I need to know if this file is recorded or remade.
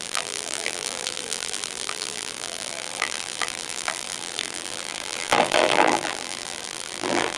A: remade